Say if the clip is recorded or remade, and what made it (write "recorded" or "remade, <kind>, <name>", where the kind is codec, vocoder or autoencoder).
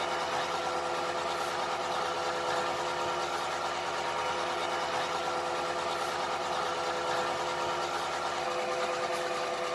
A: recorded